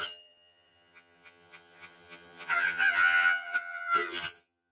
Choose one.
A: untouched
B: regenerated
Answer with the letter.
B